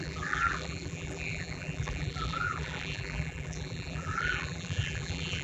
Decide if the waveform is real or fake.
fake